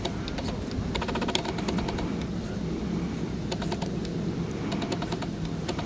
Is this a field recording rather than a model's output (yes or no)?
yes